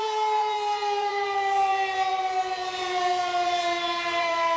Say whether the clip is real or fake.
fake